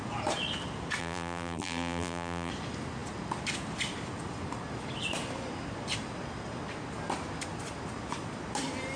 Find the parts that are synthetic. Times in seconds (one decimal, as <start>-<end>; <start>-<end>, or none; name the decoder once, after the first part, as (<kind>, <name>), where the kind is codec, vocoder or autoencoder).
1.0-2.5 (vocoder, BigVGAN v2)